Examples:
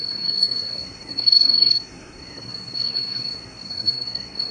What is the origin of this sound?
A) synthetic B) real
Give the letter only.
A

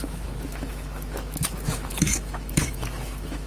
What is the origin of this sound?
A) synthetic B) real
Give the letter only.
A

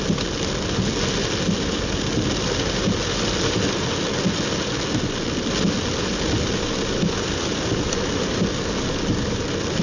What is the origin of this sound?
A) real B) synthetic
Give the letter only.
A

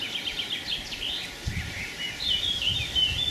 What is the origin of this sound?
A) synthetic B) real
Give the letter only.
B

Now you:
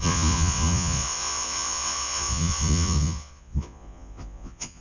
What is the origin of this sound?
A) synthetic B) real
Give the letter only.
A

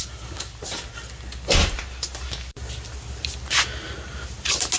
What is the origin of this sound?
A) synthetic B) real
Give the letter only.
B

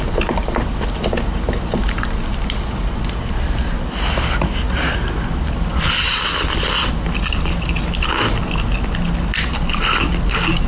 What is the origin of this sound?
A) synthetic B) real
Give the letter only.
B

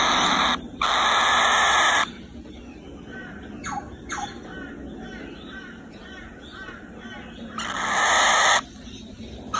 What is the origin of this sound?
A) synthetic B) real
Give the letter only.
B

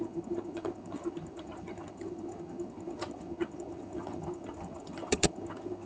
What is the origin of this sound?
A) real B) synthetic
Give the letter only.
B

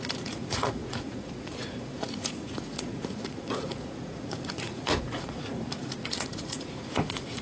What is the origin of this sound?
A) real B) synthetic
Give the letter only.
B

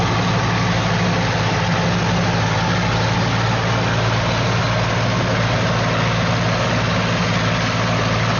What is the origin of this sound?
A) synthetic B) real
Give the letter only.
B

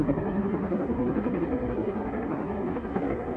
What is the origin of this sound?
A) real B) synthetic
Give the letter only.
B